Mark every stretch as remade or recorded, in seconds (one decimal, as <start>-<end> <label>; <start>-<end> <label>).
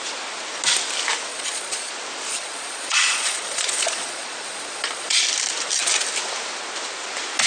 0.0-1.3 recorded; 1.3-1.9 remade; 1.9-2.3 recorded; 2.3-5.2 remade; 5.2-7.5 recorded